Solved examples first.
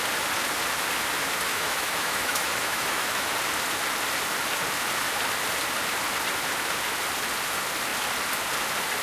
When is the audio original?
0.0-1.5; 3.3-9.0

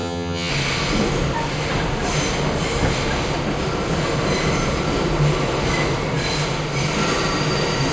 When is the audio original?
0.5-7.9

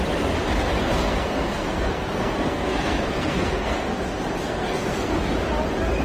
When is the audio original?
0.0-0.8; 4.0-4.4; 5.2-6.0